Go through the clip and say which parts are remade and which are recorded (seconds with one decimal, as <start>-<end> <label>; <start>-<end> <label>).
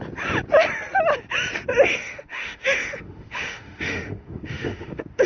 0.0-1.9 recorded; 1.9-5.3 remade